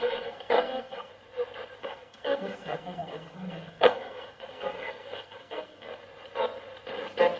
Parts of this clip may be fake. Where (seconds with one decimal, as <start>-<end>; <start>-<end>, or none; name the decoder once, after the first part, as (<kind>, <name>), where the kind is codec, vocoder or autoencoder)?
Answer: 0.0-1.1 (codec, SNAC); 1.8-5.9